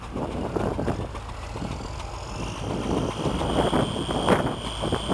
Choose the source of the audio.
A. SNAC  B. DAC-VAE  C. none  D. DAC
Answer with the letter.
C